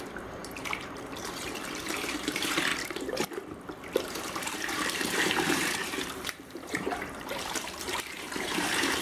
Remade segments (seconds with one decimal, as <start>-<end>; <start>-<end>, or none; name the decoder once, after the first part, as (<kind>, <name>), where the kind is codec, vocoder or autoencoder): 0.0-2.7 (vocoder, BigVGAN v2); 4.0-9.0